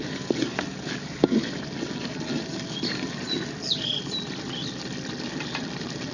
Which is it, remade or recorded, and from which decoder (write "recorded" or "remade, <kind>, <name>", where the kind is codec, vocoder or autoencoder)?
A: recorded